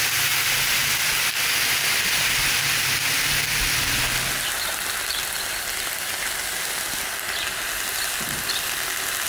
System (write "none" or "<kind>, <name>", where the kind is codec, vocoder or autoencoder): none